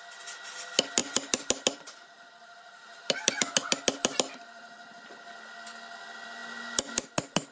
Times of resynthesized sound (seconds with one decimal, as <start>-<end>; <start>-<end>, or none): 1.0-3.3; 4.0-5.1